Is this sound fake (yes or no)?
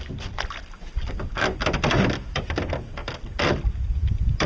no